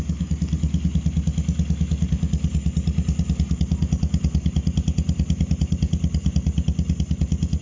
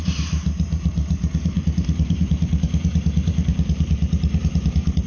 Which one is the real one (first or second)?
first